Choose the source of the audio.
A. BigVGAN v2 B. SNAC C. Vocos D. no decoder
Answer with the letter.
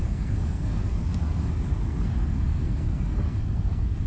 B